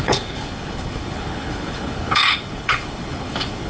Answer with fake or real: fake